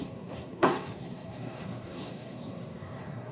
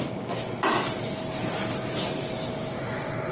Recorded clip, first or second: second